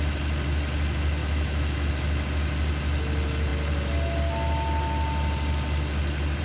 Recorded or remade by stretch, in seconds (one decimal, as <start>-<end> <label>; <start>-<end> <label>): 0.0-1.2 recorded; 1.2-1.9 remade; 1.9-6.4 recorded